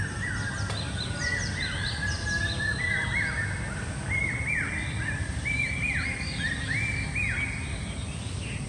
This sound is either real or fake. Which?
real